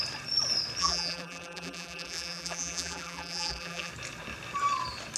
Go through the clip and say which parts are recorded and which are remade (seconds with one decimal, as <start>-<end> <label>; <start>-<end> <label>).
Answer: 0.0-0.8 recorded; 0.8-3.9 remade; 3.9-5.2 recorded